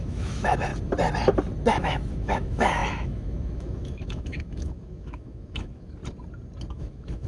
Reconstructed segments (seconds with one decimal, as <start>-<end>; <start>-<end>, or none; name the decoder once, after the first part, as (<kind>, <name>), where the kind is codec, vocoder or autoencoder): 0.0-0.7 (autoencoder, DAC-VAE); 1.7-6.0; 6.7-7.3